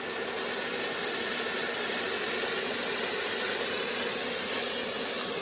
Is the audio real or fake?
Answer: real